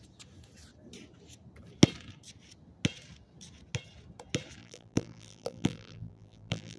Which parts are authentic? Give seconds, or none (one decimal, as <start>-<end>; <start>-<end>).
0.0-4.6